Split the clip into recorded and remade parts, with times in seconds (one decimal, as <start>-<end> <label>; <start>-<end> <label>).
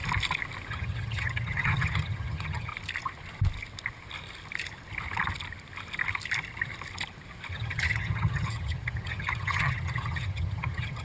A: 0.0-0.7 recorded; 0.7-2.7 remade; 2.7-7.5 recorded; 7.5-11.0 remade